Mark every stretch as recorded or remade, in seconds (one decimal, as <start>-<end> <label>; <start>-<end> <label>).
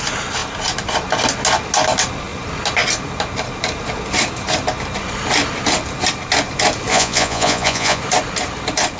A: 0.0-6.9 recorded; 6.9-8.0 remade; 8.0-9.0 recorded